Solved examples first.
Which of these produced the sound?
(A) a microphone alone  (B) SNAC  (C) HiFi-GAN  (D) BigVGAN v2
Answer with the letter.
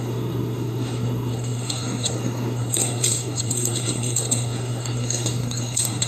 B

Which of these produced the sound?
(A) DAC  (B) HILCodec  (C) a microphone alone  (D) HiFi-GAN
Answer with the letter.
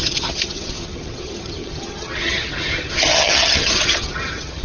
D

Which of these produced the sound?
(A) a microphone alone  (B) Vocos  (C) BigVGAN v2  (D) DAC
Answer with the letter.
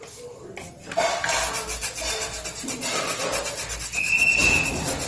A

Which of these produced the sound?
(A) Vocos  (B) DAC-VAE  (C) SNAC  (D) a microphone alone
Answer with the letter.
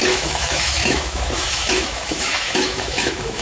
B